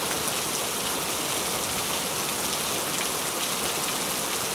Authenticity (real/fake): real